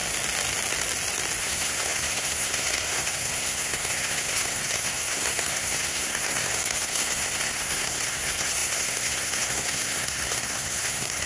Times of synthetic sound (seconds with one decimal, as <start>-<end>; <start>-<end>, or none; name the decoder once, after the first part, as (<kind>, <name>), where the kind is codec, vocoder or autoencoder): 1.4-11.3 (codec, SNAC)